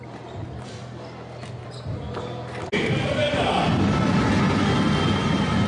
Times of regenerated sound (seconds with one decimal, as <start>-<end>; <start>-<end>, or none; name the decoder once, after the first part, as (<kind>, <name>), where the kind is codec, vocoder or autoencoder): none